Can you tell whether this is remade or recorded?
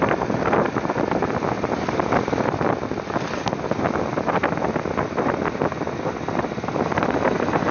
recorded